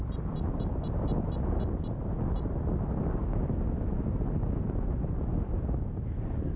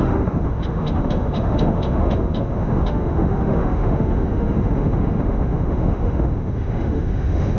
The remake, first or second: second